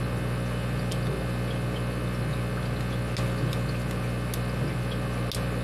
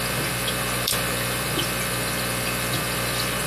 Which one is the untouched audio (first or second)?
first